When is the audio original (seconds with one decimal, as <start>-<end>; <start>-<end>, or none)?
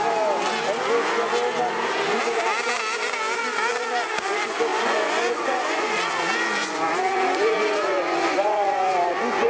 0.0-4.7; 6.1-6.6